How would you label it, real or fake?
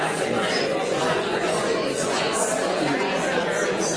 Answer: fake